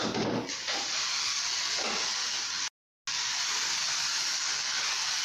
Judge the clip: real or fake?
real